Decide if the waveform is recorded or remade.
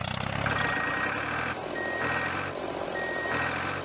recorded